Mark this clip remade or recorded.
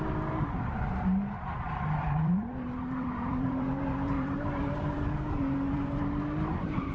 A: remade